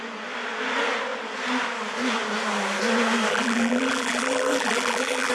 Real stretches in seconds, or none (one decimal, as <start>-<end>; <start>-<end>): 0.0-3.3